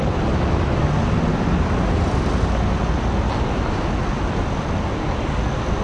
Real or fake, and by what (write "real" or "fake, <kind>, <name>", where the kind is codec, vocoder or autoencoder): real